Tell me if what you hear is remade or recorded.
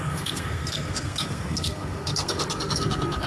remade